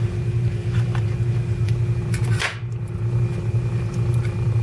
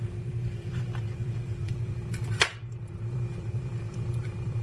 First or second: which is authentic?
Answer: first